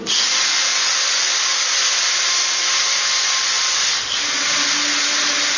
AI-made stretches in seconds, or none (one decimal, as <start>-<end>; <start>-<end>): none